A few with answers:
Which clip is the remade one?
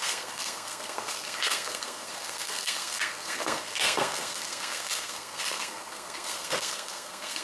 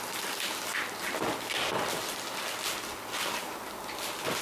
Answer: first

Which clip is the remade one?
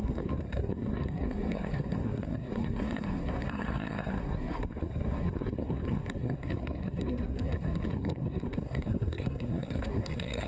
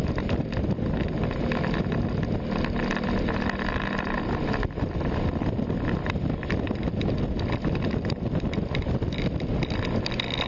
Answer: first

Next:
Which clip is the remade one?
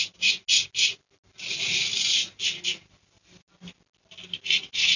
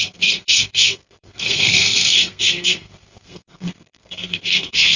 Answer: second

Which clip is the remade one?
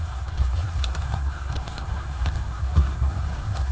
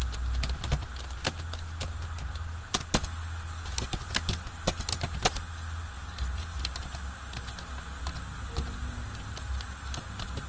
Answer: first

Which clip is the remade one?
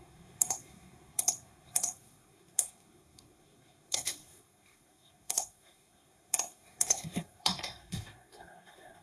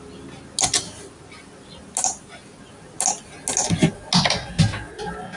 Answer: first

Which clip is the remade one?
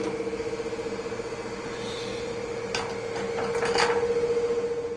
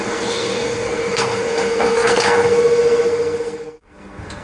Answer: second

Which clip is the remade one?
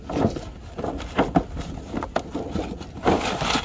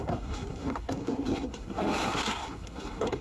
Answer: second